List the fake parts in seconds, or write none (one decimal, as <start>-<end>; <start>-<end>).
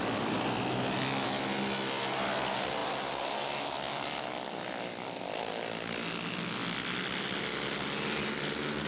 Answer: none